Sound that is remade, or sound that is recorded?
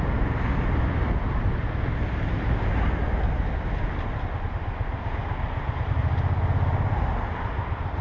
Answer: recorded